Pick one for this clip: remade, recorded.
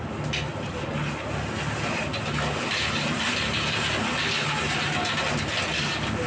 recorded